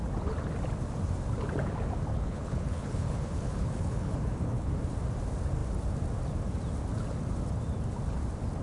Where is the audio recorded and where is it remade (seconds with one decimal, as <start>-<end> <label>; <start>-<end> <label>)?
0.0-2.1 recorded; 2.1-4.7 remade; 4.7-8.6 recorded